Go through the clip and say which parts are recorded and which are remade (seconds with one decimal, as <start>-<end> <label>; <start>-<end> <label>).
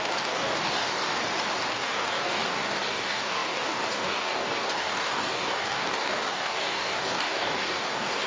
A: 0.0-1.2 remade; 1.2-1.7 recorded; 1.7-8.3 remade